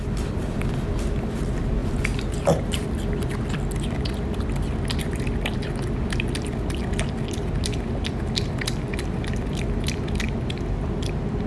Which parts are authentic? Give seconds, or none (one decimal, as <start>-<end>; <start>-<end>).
0.0-11.5